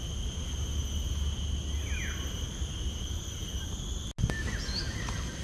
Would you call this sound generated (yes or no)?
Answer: no